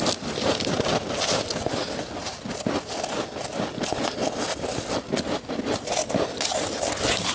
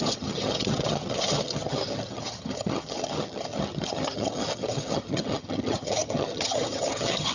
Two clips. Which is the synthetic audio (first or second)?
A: second